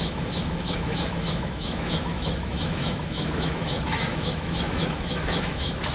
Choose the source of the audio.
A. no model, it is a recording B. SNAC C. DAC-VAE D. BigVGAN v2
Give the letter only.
C